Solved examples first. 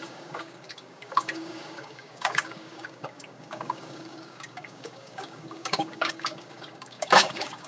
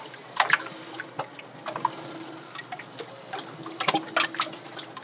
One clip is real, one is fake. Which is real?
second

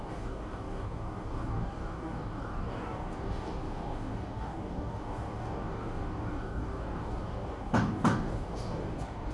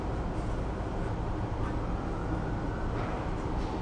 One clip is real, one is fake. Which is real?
second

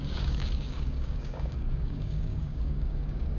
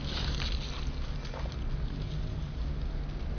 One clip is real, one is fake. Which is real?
second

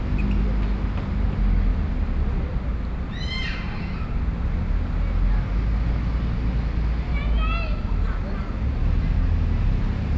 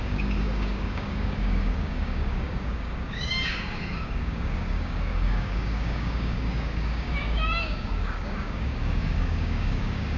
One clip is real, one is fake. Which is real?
first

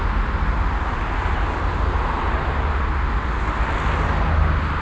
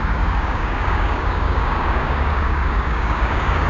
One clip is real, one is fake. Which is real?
first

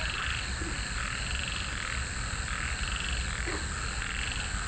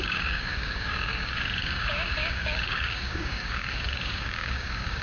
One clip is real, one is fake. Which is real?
first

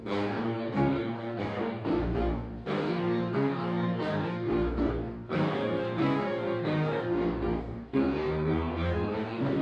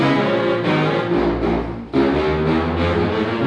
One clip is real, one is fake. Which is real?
second